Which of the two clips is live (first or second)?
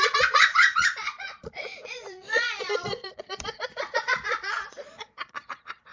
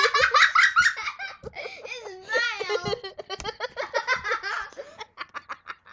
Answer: second